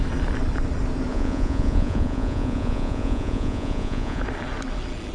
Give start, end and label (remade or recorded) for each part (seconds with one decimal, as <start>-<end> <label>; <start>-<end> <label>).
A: 0.0-1.1 recorded; 1.1-4.2 remade; 4.2-5.1 recorded

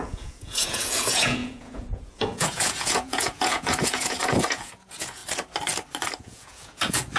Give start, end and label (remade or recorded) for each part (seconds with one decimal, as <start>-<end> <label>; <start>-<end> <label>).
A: 0.0-5.2 remade; 5.2-6.2 recorded; 6.2-7.2 remade